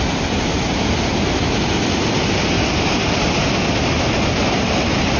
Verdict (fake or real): real